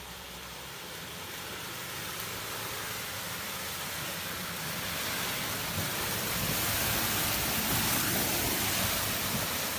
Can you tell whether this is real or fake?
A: fake